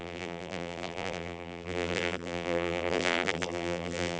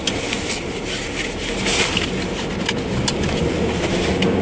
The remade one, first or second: first